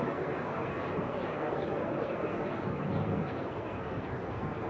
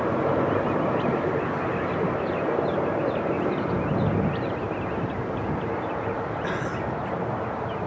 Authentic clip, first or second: second